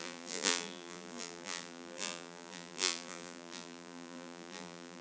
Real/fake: fake